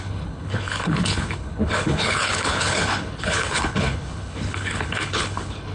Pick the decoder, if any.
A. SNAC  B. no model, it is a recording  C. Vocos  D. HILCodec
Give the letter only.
D